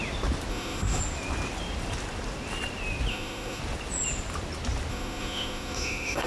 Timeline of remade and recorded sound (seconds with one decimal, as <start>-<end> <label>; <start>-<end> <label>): 0.0-0.5 recorded; 0.5-1.0 remade; 1.0-3.1 recorded; 3.1-3.6 remade; 3.6-4.9 recorded; 4.9-6.3 remade